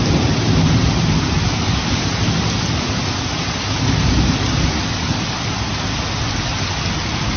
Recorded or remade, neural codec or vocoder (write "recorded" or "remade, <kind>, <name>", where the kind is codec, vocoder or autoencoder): recorded